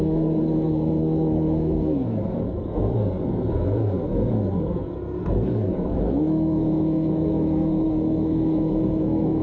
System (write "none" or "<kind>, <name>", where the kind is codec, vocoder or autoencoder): codec, SNAC